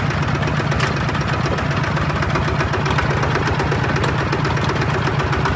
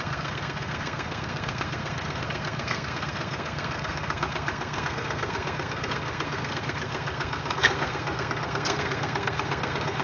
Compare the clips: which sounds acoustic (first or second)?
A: first